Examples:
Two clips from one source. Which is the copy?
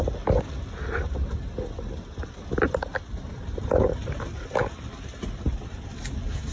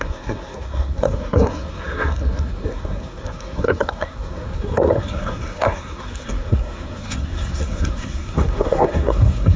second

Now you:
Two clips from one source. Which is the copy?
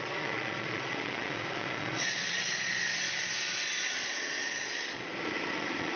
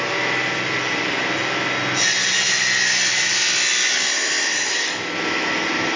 first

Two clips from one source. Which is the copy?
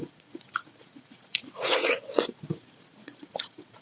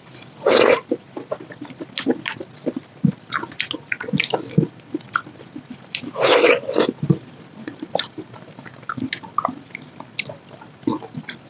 first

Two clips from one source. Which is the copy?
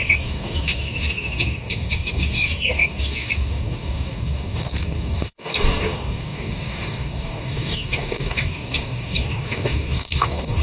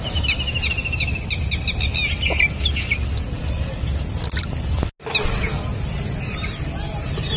first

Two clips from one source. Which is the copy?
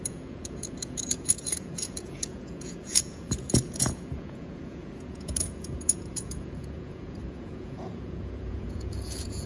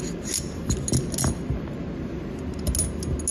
first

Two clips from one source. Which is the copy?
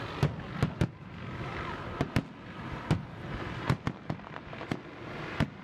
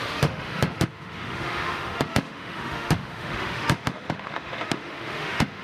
second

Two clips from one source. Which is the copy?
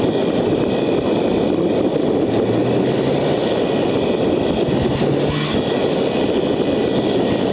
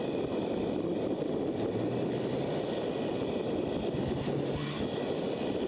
second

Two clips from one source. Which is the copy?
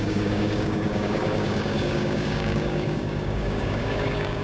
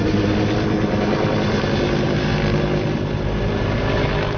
first